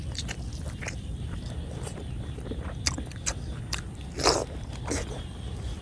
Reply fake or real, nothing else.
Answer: fake